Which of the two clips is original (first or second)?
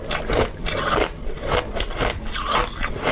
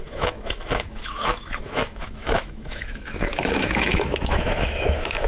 first